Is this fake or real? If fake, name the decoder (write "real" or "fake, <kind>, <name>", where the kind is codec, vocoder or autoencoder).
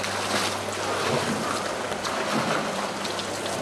real